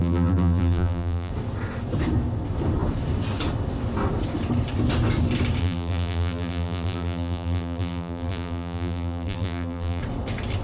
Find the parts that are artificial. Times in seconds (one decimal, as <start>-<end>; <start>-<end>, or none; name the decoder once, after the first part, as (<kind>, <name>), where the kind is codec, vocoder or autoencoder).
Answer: 0.0-1.3 (vocoder, BigVGAN v2); 5.6-10.0